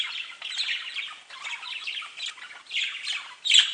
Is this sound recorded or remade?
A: recorded